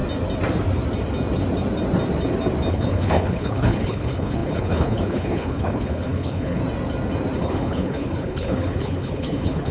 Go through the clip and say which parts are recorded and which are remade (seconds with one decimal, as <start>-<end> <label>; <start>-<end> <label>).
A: 0.0-2.7 recorded; 2.7-6.6 remade; 6.6-7.4 recorded; 7.4-9.7 remade

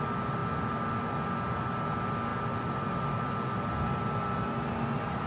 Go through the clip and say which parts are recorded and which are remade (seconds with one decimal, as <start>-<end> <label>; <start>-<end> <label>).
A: 0.0-5.3 recorded